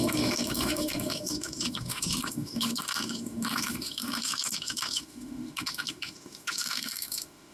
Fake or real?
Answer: fake